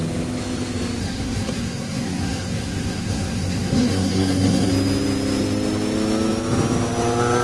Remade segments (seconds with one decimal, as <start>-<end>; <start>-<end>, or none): 1.0-4.7